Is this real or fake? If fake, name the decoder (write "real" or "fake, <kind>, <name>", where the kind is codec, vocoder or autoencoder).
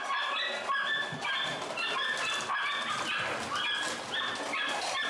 real